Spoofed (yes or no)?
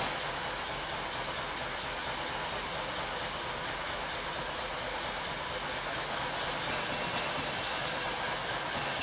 no